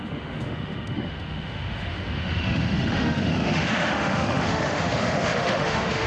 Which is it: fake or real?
fake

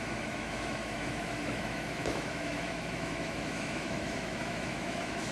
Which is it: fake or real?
fake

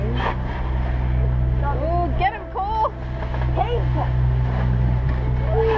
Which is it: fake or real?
real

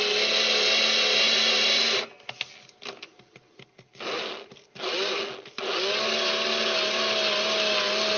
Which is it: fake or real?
real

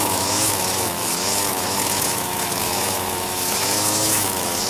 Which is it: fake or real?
fake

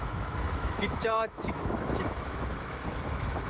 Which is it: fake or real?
fake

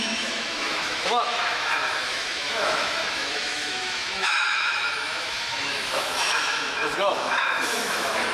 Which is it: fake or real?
fake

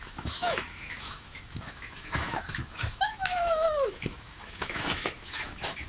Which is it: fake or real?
fake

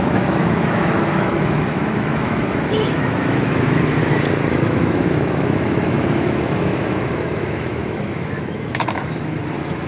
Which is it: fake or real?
fake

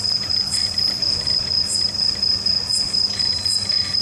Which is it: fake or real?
real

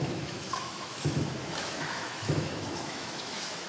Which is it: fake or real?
fake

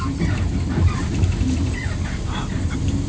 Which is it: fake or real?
real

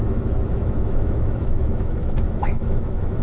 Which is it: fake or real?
fake